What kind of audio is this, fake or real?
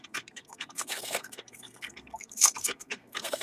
fake